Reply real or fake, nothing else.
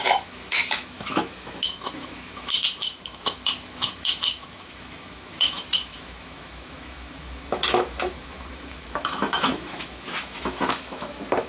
fake